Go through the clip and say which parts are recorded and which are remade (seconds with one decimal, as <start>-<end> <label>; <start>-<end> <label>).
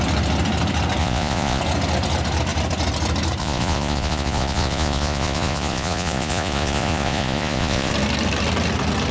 0.0-1.0 recorded; 1.0-1.6 remade; 1.6-3.4 recorded; 3.4-7.9 remade; 7.9-9.1 recorded